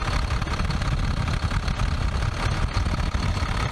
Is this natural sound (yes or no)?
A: yes